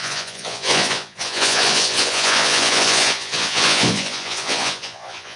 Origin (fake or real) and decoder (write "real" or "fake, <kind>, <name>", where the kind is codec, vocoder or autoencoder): fake, vocoder, Vocos